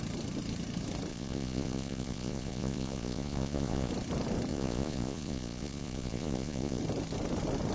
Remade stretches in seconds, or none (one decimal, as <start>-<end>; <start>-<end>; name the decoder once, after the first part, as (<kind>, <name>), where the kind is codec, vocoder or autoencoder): 1.1-3.9 (vocoder, Vocos); 4.5-6.8